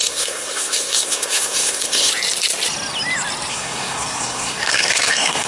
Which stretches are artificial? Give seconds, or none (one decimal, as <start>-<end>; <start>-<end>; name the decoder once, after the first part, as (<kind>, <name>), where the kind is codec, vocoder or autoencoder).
0.0-2.1 (codec, SNAC); 3.5-5.5